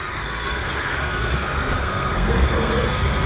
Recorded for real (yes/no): no